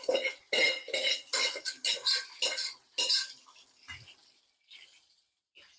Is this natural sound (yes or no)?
yes